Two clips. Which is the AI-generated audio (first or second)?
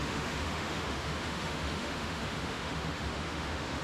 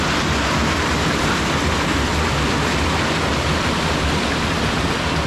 first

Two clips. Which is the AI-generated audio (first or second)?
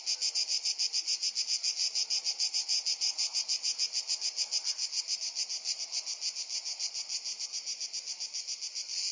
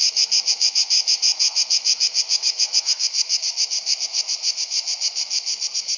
second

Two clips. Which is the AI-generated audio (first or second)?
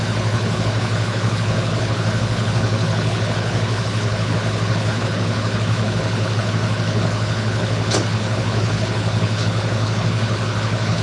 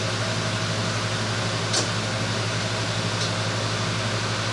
first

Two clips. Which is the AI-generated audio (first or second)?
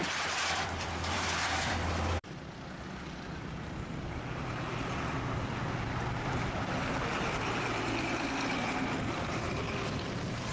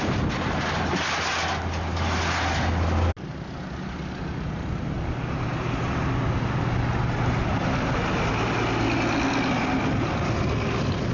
first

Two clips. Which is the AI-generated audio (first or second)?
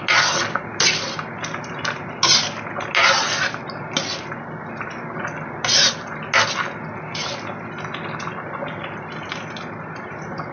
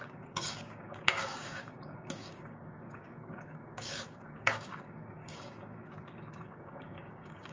second